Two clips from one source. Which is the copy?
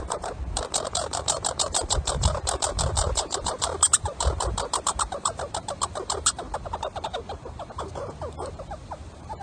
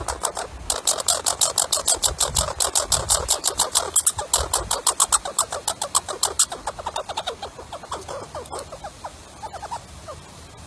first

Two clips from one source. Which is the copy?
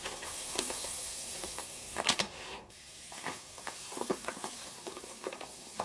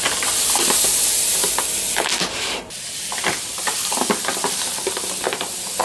first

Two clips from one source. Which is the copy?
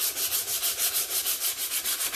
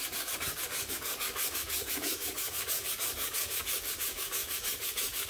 second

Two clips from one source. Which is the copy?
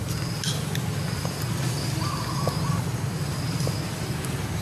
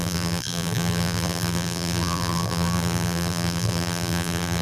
second